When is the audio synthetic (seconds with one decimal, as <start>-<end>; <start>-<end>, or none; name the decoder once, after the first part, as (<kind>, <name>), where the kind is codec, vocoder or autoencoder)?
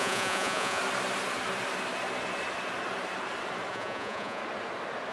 0.0-0.8 (vocoder, Vocos); 3.7-4.4